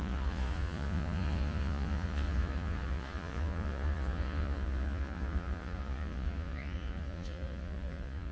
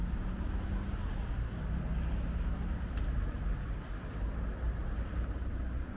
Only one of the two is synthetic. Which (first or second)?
first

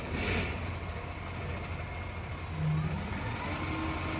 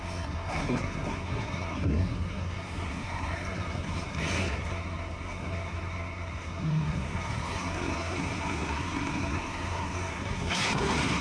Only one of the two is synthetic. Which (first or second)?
second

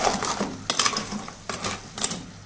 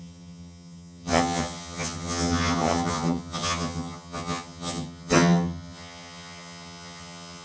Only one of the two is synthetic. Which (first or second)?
second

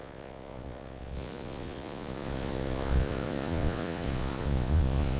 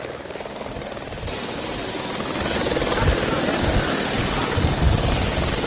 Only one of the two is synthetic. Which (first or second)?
first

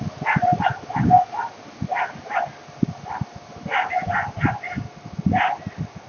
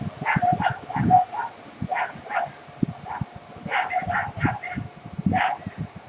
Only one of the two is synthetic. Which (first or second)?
second